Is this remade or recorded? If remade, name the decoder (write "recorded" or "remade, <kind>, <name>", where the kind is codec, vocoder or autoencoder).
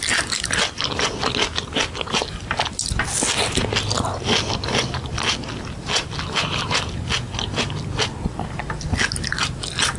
recorded